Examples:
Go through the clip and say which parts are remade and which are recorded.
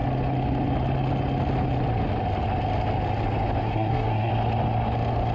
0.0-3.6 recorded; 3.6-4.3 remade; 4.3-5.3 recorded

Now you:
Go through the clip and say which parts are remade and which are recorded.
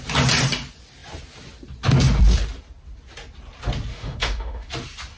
0.0-3.9 recorded; 3.9-4.7 remade; 4.7-5.2 recorded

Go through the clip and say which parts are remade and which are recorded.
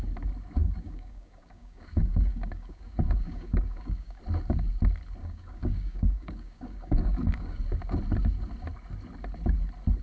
0.0-0.6 recorded; 0.6-4.2 remade; 4.2-5.2 recorded; 5.2-7.6 remade; 7.6-10.0 recorded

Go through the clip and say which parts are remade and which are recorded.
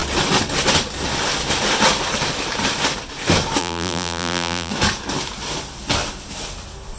0.0-3.6 recorded; 3.6-4.7 remade; 4.7-7.0 recorded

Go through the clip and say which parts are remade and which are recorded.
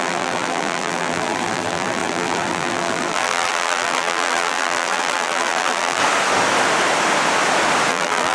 0.0-6.0 remade; 6.0-7.9 recorded; 7.9-8.3 remade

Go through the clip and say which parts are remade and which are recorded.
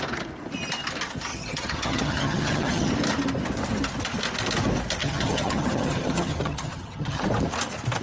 0.0-1.3 recorded; 1.3-2.9 remade; 2.9-5.0 recorded; 5.0-7.2 remade; 7.2-8.0 recorded